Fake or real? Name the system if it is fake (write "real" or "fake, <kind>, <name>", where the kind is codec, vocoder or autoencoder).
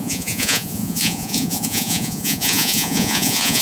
fake, vocoder, Vocos